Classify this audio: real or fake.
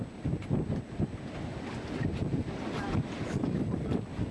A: real